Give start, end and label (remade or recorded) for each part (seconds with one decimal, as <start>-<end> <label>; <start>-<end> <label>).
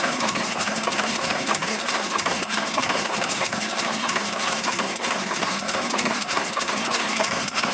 0.0-7.7 remade